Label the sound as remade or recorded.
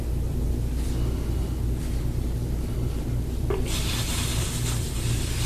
recorded